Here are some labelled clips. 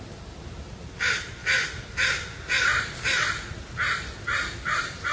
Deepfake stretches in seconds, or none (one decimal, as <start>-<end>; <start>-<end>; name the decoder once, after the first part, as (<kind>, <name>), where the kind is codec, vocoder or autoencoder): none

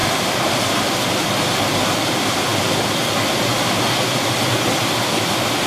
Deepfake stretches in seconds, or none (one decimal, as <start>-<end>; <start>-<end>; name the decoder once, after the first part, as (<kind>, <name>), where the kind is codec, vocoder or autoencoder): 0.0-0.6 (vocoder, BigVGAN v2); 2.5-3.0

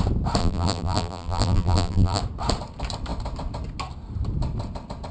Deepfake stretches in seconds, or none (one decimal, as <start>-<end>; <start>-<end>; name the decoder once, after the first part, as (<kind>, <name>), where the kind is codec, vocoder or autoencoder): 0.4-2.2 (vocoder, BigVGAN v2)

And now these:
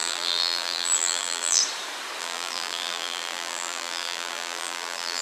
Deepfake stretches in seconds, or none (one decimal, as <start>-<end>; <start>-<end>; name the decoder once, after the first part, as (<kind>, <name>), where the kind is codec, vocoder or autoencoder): 0.0-1.6 (vocoder, BigVGAN v2); 2.2-5.2

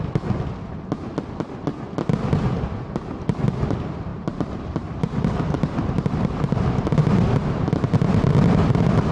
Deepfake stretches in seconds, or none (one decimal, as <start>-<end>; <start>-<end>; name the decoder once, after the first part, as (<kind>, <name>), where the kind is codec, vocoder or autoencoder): 4.1-6.5 (vocoder, BigVGAN v2)

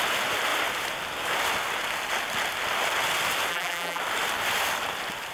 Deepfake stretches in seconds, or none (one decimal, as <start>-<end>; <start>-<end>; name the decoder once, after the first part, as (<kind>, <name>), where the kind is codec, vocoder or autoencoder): 3.5-4.0 (vocoder, BigVGAN v2)